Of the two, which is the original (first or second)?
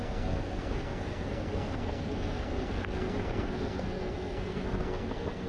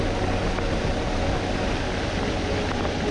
second